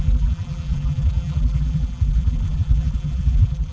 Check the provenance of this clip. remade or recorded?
remade